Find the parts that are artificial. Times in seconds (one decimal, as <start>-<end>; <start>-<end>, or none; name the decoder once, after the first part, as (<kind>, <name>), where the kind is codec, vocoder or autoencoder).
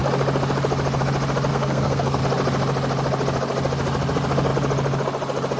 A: 1.5-2.2 (codec, SNAC)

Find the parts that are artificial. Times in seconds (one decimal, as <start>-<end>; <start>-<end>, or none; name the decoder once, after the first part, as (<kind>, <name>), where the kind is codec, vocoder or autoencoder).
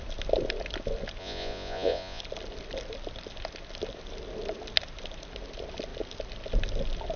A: 1.2-2.2 (vocoder, Vocos)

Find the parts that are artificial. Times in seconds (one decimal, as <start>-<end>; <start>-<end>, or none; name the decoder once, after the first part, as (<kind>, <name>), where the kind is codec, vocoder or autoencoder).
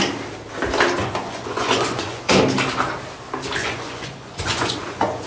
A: 1.0-2.3 (vocoder, Vocos); 3.6-5.3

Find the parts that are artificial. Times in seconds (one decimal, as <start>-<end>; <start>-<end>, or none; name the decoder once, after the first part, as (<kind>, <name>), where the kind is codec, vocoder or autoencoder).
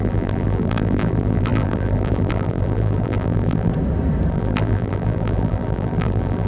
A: 0.0-3.7 (vocoder, BigVGAN v2); 4.3-6.5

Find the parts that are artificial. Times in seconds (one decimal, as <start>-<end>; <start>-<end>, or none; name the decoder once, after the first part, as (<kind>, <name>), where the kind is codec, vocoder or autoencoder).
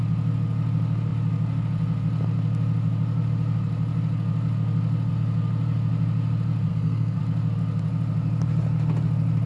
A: 6.7-7.2 (codec, SNAC)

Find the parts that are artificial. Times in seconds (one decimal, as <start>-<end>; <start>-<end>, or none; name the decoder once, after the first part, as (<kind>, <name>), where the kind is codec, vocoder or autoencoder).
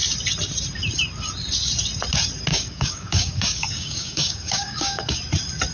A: 2.5-5.2 (codec, DAC)